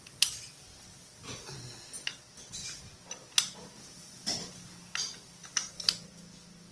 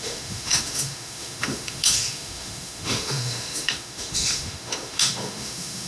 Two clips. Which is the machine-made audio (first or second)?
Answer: second